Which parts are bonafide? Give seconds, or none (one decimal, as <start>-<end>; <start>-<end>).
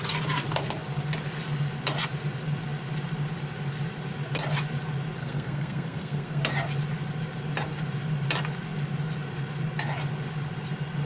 0.0-5.2; 6.4-11.1